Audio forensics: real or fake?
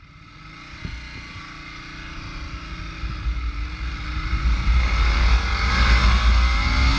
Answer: real